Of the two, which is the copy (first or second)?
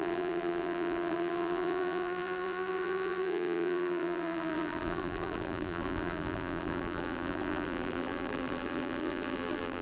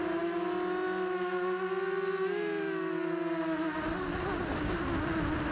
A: first